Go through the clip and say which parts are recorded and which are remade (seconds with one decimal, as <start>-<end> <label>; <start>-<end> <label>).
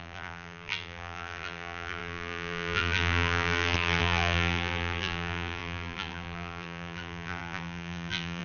0.0-8.4 remade